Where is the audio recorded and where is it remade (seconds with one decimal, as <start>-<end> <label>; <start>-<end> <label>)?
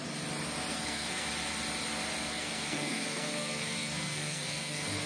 0.0-0.7 recorded; 0.7-1.3 remade; 1.3-2.3 recorded; 2.3-5.1 remade